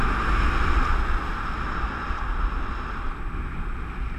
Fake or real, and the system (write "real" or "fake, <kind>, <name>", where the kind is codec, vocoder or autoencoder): real